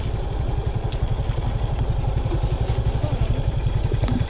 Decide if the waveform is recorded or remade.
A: recorded